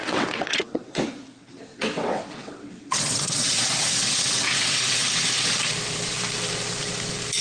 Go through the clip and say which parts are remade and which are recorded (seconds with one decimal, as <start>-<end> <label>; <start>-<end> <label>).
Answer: 0.0-1.0 remade; 1.0-1.7 recorded; 1.7-5.5 remade; 5.5-7.4 recorded